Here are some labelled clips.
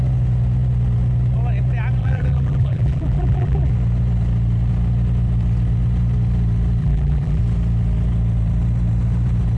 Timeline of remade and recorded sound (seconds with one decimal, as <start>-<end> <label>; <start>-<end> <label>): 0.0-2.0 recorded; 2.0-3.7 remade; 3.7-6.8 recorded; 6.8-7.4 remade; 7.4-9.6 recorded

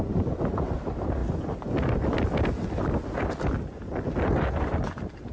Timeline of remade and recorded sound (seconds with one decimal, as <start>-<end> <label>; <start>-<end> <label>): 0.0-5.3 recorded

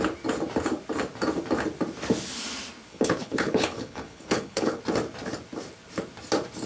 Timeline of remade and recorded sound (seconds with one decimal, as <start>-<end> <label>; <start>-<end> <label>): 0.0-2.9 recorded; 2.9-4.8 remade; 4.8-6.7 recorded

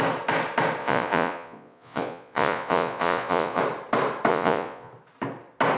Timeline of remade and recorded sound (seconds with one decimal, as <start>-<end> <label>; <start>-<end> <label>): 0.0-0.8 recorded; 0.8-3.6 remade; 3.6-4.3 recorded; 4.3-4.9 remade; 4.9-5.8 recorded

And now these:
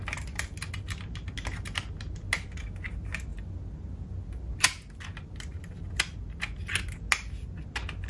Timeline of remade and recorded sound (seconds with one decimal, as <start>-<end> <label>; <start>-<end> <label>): 0.0-8.1 recorded

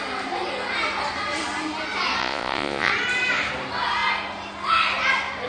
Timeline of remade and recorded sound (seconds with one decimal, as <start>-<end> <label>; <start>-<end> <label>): 0.0-2.2 recorded; 2.2-2.9 remade; 2.9-5.5 recorded

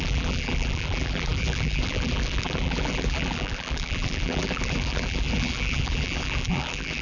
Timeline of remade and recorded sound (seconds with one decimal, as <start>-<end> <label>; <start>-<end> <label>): 0.0-7.0 remade

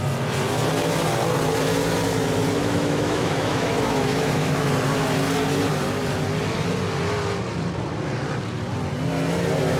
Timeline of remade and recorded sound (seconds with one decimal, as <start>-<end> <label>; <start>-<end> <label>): 0.0-2.6 recorded; 2.6-4.7 remade; 4.7-9.8 recorded